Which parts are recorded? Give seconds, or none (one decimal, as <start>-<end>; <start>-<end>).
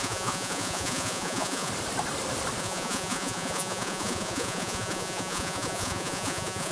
1.7-2.6